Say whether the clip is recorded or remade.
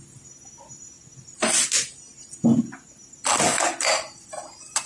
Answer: recorded